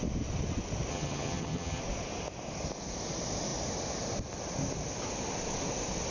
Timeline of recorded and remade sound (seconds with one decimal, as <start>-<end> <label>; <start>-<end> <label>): 0.0-0.9 recorded; 0.9-1.8 remade; 1.8-6.1 recorded